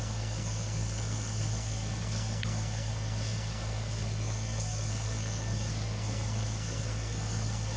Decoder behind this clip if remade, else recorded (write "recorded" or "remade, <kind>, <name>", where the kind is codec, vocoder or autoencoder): remade, codec, SNAC